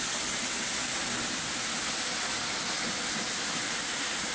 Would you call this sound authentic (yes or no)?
yes